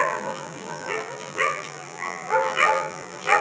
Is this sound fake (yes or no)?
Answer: yes